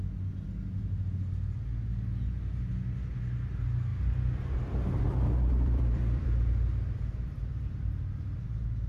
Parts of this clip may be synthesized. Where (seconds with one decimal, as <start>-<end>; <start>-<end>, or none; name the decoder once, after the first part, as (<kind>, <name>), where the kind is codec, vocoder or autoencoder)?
3.9-8.9 (vocoder, BigVGAN v2)

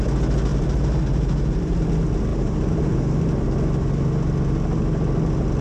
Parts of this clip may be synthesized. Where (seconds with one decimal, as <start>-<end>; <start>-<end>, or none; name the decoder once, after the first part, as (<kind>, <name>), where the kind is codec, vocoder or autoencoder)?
0.5-1.9 (vocoder, BigVGAN v2); 2.3-3.0

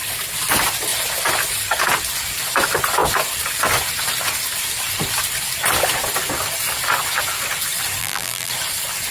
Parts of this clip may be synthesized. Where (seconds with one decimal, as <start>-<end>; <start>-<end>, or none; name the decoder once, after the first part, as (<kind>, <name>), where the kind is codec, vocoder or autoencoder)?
8.0-8.5 (vocoder, BigVGAN v2)

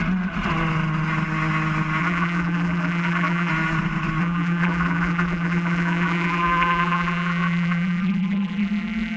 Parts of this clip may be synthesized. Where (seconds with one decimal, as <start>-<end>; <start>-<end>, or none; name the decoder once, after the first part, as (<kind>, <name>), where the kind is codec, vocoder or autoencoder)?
2.0-3.5 (vocoder, BigVGAN v2); 4.2-9.2